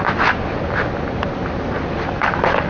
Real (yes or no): yes